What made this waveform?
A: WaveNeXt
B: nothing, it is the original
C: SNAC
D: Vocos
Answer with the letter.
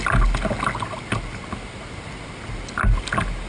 B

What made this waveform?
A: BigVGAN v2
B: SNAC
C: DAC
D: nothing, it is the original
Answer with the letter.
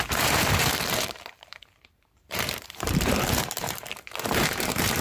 A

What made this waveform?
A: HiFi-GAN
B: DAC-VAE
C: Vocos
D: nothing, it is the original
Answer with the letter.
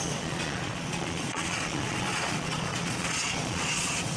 C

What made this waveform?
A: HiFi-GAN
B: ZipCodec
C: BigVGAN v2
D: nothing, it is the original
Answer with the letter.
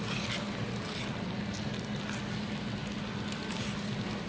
D